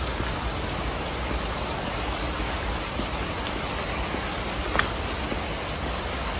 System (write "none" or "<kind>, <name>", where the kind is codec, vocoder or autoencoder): none